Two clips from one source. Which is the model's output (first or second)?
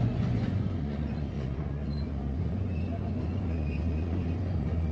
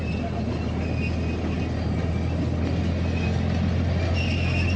first